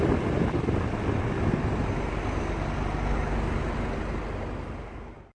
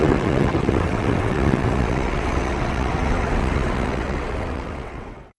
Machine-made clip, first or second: second